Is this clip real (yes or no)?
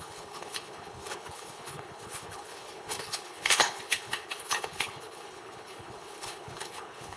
no